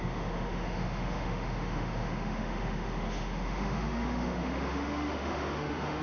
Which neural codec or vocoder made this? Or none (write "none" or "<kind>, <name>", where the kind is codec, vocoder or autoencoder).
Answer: autoencoder, DAC-VAE